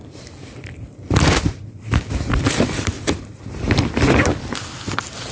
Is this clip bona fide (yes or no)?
no